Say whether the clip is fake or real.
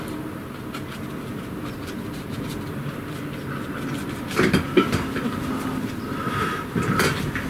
fake